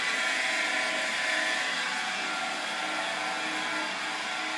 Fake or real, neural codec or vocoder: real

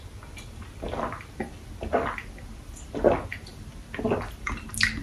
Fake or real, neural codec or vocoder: real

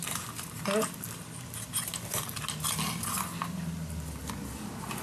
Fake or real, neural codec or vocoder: real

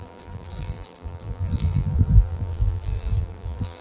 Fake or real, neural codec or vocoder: fake, vocoder, BigVGAN v2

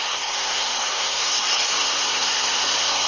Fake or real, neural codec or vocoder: fake, codec, SNAC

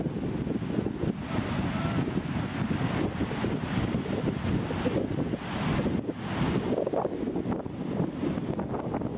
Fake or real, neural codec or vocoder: real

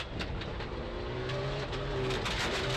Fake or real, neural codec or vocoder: real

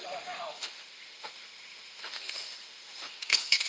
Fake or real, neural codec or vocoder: fake, autoencoder, DAC-VAE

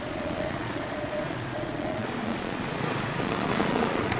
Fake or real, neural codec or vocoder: fake, vocoder, Vocos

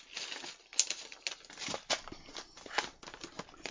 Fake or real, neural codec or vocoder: real